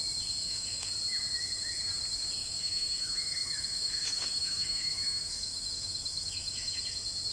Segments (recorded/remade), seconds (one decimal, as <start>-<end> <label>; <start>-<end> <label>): 0.0-0.4 recorded; 0.4-0.9 remade; 0.9-2.4 recorded; 2.4-6.8 remade; 6.8-7.3 recorded